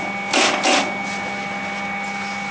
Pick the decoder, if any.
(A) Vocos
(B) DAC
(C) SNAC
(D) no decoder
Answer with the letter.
D